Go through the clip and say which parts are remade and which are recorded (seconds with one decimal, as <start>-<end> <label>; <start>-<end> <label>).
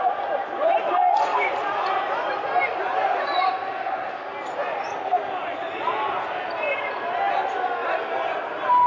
0.0-8.9 recorded